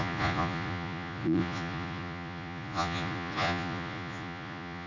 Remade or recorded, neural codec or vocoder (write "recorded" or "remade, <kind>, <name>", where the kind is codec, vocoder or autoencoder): remade, vocoder, Vocos